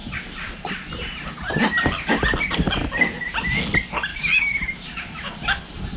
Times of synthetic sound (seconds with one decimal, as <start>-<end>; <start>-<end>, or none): 4.1-5.3